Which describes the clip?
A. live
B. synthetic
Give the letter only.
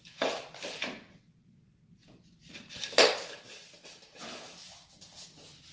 A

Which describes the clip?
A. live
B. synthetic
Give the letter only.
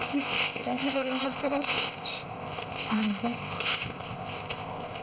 B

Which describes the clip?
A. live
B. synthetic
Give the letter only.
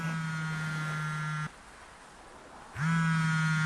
A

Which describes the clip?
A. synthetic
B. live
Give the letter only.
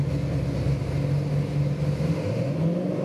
B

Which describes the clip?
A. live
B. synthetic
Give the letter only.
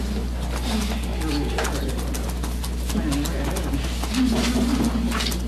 A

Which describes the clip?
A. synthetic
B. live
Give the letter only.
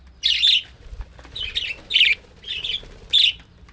B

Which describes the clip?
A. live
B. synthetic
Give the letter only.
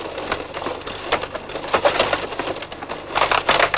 A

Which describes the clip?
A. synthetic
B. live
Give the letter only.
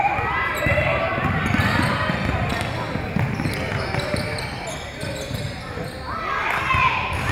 B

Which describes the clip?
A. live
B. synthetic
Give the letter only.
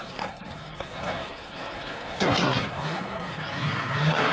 B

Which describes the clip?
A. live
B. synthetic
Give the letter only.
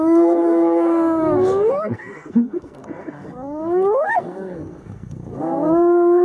B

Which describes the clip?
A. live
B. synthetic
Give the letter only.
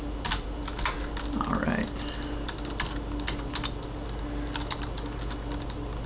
A